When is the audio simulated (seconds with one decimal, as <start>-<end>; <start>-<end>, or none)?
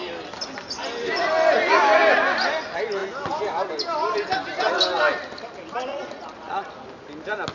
5.9-6.7